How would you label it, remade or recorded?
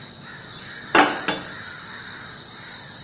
recorded